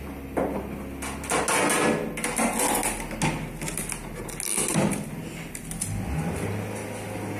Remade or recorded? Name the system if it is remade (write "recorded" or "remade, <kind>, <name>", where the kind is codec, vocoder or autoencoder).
recorded